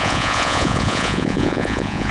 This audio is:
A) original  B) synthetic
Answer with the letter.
B